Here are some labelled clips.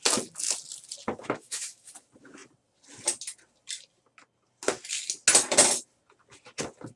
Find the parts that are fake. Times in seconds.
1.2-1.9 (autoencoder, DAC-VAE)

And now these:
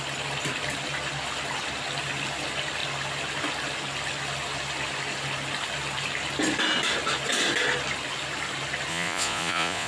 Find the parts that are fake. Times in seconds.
8.9-9.9 (vocoder, Vocos)